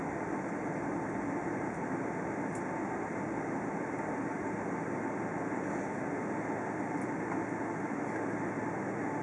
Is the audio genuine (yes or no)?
yes